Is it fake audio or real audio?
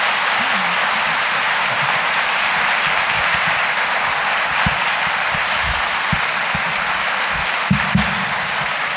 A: real